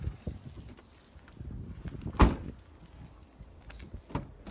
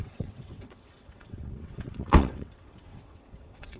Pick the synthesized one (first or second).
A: second